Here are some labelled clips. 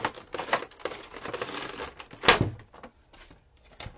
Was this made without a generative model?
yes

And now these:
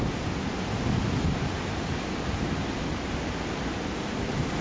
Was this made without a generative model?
yes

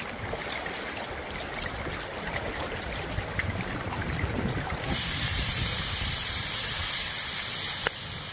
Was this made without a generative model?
yes